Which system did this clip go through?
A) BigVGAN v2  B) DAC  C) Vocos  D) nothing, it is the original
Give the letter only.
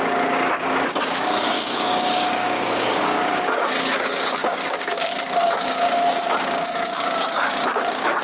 B